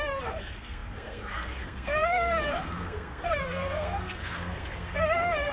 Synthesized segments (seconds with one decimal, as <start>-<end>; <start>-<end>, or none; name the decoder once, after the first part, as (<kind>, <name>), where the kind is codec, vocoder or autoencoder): 0.0-5.5 (codec, SNAC)